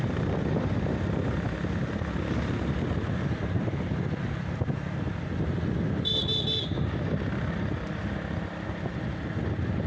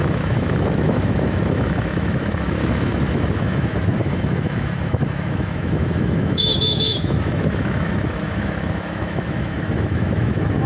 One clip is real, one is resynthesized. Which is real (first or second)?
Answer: first